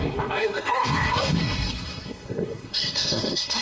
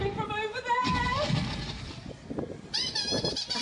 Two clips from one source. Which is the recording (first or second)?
second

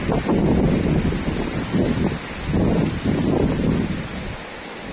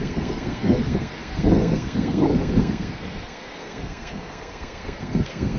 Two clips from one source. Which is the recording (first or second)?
first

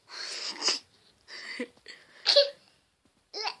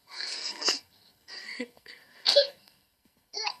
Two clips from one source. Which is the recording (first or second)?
first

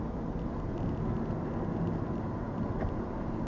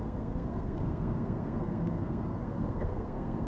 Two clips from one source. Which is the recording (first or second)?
first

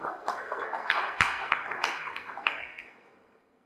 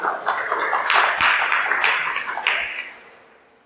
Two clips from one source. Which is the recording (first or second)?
second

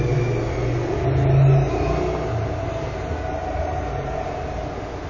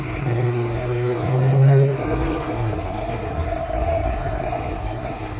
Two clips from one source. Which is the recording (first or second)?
first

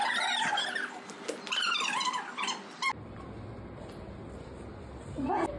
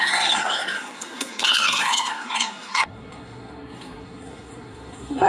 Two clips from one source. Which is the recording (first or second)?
first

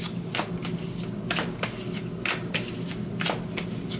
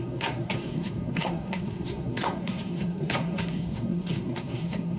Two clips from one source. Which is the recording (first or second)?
first